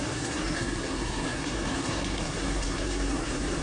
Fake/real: fake